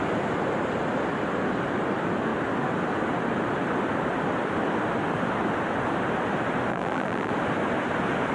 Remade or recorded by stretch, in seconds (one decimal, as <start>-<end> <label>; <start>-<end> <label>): 0.0-6.7 recorded; 6.7-7.3 remade; 7.3-8.3 recorded